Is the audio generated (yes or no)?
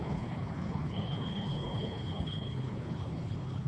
yes